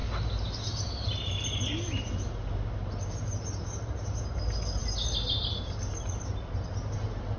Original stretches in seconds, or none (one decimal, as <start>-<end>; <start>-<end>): 0.0-7.4